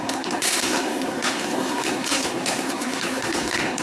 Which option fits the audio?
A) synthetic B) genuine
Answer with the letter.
A